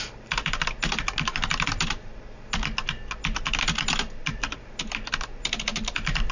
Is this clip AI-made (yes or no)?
no